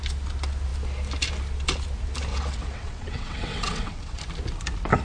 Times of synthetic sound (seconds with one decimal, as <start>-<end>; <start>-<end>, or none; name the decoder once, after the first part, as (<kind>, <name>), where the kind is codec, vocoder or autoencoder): 2.3-4.2 (vocoder, WaveNeXt)